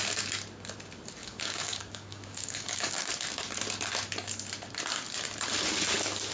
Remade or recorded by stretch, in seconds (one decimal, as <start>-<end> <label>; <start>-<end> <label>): 0.0-1.2 recorded; 1.2-3.1 remade; 3.1-6.3 recorded